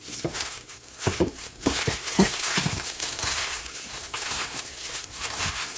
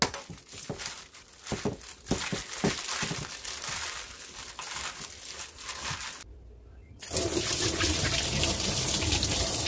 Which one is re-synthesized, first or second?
first